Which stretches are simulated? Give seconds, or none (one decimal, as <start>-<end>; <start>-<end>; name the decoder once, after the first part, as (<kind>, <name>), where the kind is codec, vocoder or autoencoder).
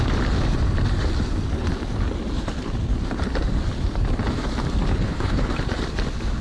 4.9-5.5 (codec, HILCodec)